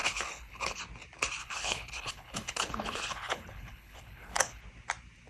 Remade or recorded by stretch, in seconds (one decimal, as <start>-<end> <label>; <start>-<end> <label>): 0.0-0.8 remade; 0.8-1.4 recorded; 1.4-4.6 remade; 4.6-5.3 recorded